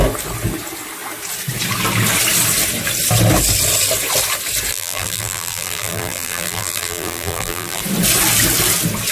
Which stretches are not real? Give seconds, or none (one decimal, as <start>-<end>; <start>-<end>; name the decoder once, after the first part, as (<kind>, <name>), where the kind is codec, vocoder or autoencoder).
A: 4.7-7.8 (vocoder, BigVGAN v2)